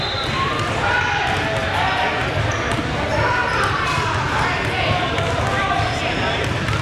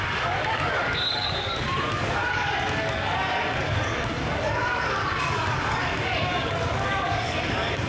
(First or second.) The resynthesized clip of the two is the second